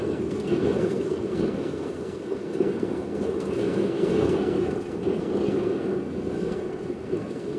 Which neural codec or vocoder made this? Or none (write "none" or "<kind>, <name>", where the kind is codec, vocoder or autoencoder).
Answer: codec, SNAC